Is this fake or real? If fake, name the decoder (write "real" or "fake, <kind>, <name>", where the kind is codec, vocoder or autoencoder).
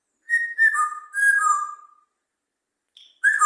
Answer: real